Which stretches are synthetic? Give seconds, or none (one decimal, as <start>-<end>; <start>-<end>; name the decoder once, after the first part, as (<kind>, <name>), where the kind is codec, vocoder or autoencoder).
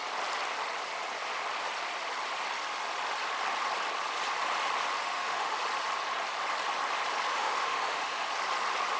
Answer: 5.0-5.6 (autoencoder, DAC-VAE); 7.3-8.3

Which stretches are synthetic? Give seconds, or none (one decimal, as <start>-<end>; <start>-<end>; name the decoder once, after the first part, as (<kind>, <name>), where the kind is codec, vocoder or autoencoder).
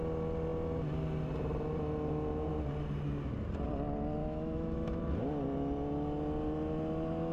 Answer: 4.2-5.0 (autoencoder, DAC-VAE)